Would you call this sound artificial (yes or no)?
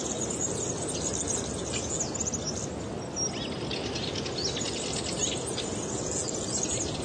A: no